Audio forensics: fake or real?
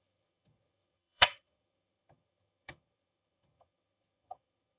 fake